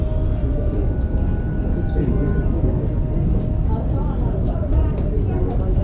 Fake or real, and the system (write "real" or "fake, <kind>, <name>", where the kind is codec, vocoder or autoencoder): real